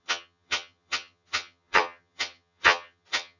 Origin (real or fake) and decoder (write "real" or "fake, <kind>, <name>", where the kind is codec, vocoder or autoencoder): fake, vocoder, HiFi-GAN